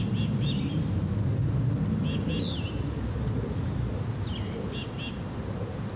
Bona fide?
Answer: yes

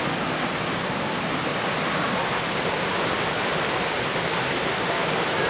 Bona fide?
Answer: yes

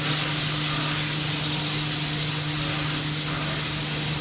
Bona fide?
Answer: yes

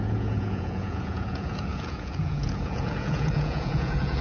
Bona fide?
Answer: no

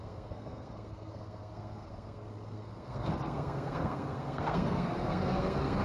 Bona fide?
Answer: no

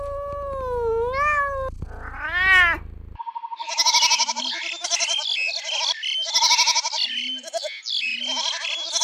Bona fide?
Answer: yes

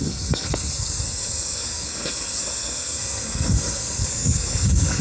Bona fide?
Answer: no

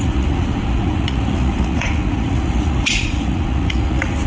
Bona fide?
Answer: no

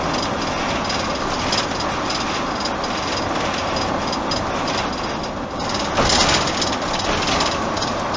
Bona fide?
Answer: yes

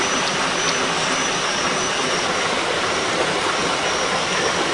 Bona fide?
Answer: yes